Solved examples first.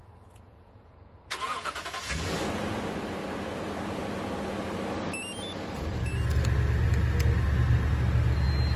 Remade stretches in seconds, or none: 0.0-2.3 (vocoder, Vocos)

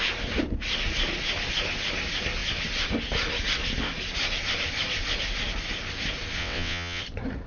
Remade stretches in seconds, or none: 6.4-7.0 (vocoder, WaveNeXt)

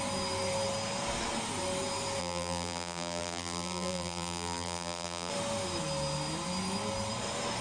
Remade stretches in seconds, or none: 2.2-5.3 (vocoder, BigVGAN v2)

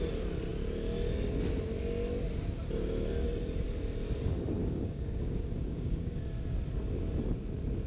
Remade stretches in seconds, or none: 4.6-6.2 (codec, DAC)

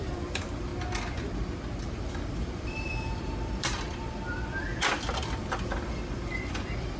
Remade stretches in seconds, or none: 0.0-0.7 (vocoder, BigVGAN v2); 2.0-7.0

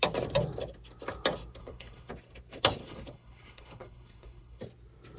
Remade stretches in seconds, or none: 1.6-2.1 (codec, HILCodec); 2.8-4.6